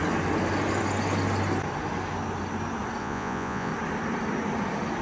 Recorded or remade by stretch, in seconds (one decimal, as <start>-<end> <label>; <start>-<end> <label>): 0.0-3.0 recorded; 3.0-3.7 remade; 3.7-5.0 recorded